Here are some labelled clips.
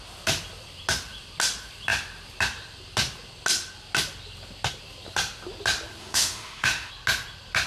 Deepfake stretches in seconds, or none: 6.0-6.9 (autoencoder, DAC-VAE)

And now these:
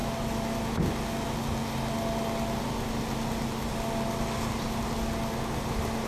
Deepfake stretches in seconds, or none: none

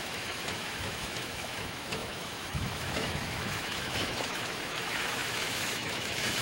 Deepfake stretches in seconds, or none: 0.0-6.4 (autoencoder, DAC-VAE)

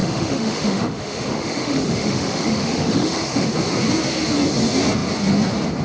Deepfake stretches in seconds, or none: 0.0-3.5 (autoencoder, DAC-VAE)